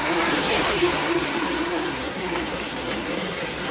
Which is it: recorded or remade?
remade